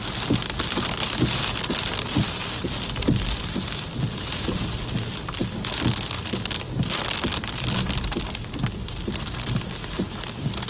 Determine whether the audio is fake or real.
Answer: real